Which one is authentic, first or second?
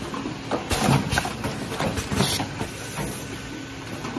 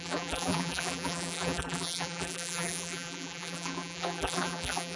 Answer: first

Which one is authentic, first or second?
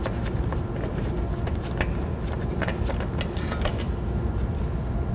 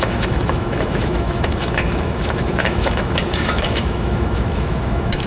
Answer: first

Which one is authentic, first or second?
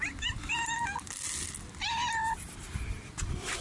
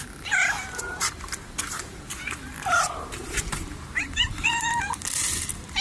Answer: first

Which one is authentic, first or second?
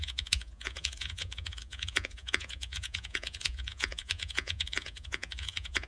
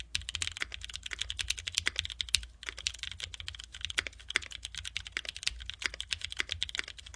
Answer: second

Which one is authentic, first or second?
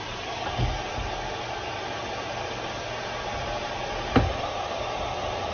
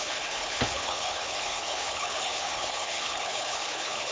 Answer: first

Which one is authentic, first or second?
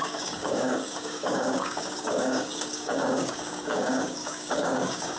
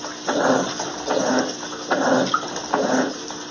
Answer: second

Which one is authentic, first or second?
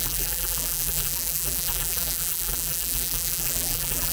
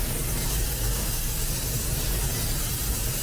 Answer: second